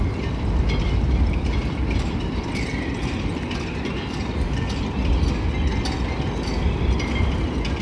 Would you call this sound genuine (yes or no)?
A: yes